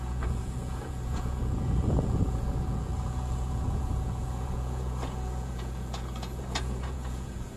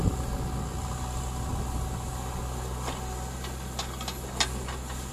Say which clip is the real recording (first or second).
second